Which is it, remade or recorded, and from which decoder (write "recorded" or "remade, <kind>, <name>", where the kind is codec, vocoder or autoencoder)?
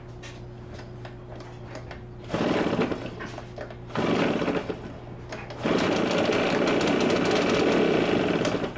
recorded